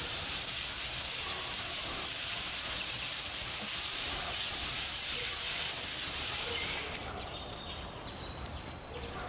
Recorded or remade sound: remade